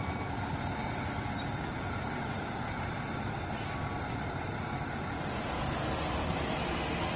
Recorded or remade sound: recorded